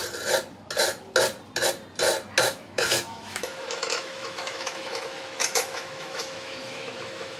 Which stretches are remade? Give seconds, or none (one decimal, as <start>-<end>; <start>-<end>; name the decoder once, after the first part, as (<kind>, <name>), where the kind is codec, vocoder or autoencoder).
2.4-7.4 (autoencoder, DAC-VAE)